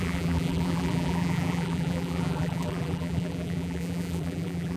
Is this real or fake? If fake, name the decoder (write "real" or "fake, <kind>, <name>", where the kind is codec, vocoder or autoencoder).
fake, vocoder, BigVGAN v2